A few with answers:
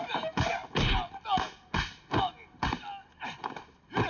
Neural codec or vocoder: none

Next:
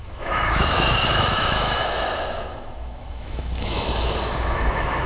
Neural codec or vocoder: autoencoder, DAC-VAE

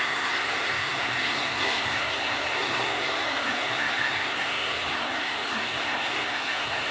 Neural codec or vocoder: codec, SNAC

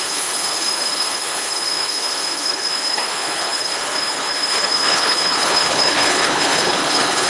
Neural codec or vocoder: codec, HILCodec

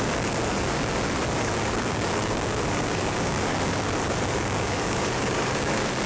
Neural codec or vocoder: codec, DAC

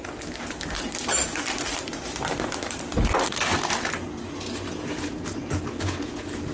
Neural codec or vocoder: none